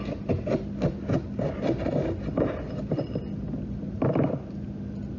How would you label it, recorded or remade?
recorded